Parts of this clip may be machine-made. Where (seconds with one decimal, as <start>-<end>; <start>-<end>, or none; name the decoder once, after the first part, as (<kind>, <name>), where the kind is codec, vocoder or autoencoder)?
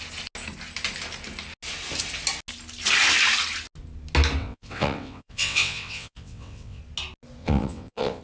4.4-6.8 (vocoder, WaveNeXt); 7.4-8.2